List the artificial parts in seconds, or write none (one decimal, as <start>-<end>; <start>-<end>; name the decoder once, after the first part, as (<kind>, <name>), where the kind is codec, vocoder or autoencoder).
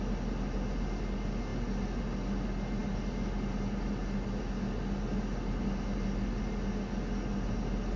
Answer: none